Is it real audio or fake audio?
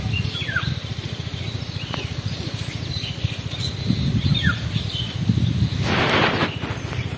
real